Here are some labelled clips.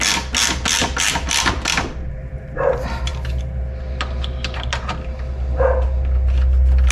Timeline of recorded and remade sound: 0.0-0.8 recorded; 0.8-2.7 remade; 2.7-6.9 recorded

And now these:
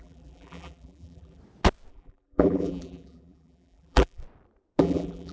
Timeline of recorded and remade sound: 0.0-1.4 remade; 1.4-1.9 recorded; 1.9-4.2 remade; 4.2-4.8 recorded; 4.8-5.3 remade

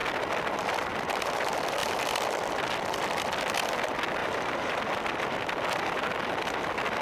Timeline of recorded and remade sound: 0.0-4.2 recorded; 4.2-4.8 remade; 4.8-7.0 recorded

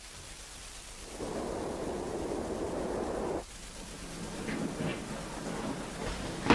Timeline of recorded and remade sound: 0.0-6.5 recorded

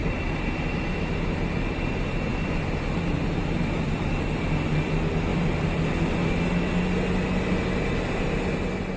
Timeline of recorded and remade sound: 0.0-5.3 recorded; 5.3-6.3 remade; 6.3-9.0 recorded